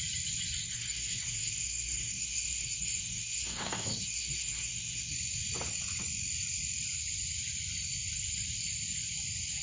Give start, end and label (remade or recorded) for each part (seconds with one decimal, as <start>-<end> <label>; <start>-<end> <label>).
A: 0.0-0.6 recorded; 0.6-5.1 remade; 5.1-9.6 recorded